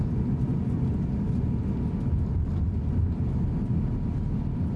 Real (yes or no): yes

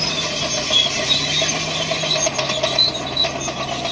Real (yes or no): yes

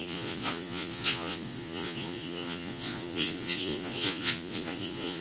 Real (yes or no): no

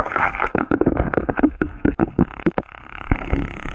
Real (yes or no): no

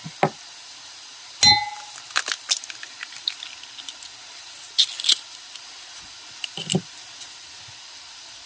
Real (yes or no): yes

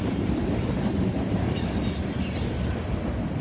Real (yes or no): yes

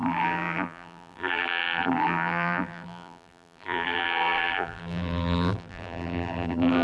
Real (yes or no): no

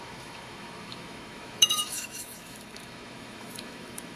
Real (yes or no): no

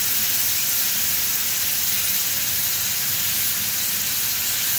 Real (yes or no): yes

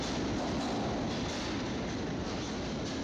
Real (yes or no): yes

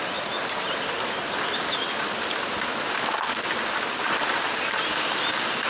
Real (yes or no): yes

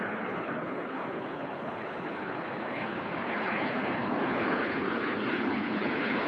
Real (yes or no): no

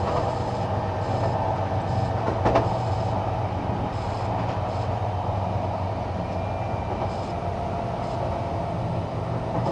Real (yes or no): yes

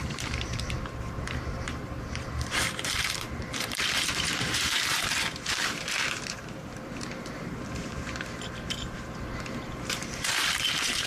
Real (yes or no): no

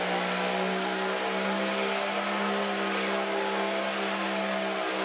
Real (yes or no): yes